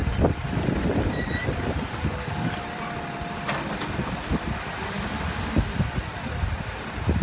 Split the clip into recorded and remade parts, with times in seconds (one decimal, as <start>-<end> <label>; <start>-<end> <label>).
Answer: 0.0-3.3 remade; 3.3-7.2 recorded